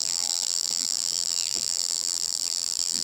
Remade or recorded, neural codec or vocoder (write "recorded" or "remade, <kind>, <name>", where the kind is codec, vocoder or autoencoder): remade, vocoder, BigVGAN v2